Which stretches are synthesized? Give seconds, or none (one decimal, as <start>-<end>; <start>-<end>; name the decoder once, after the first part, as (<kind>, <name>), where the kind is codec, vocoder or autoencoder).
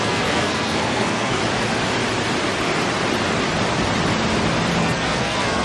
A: 0.0-1.4 (codec, SNAC); 4.8-5.6